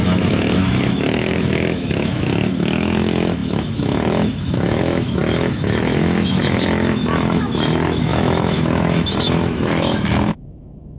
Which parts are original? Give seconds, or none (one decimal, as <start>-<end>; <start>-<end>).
none